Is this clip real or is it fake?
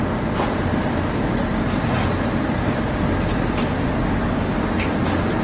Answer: real